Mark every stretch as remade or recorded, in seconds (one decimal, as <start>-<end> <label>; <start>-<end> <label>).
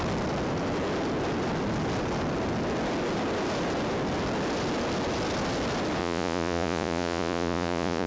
0.0-6.0 recorded; 6.0-8.1 remade